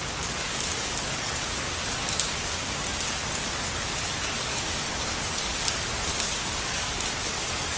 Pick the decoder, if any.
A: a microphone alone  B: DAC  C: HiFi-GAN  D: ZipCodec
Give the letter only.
B